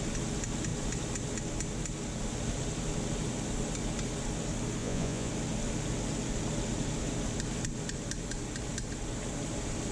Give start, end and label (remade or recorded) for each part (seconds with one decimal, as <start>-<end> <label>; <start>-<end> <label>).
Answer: 0.0-4.8 recorded; 4.8-5.3 remade; 5.3-9.9 recorded